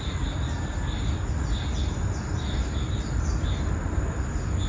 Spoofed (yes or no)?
no